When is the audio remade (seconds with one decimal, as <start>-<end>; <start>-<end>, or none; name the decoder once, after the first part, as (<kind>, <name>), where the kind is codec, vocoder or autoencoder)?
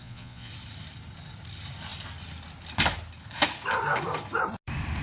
0.0-0.5 (vocoder, Vocos)